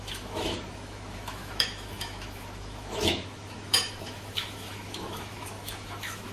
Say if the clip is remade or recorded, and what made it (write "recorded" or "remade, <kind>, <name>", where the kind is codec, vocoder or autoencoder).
remade, autoencoder, DAC-VAE